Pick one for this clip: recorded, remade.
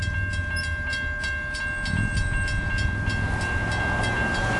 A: recorded